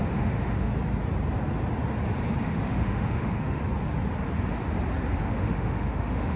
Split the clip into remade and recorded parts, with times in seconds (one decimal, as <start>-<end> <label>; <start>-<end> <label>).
0.0-0.7 remade; 0.7-2.4 recorded; 2.4-3.6 remade; 3.6-5.2 recorded; 5.2-6.4 remade